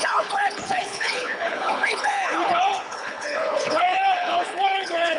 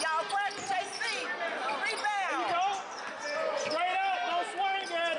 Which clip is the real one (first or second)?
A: second